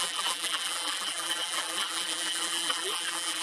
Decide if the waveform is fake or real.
fake